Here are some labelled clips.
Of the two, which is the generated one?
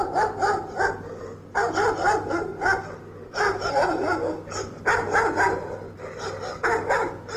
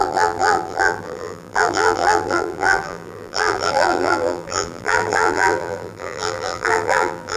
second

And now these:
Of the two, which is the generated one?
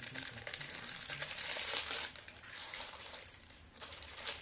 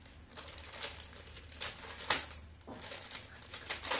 first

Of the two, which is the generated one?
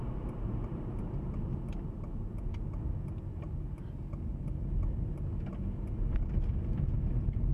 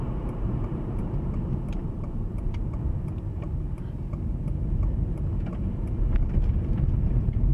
second